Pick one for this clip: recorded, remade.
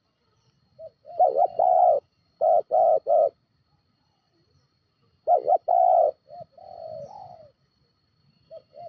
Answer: remade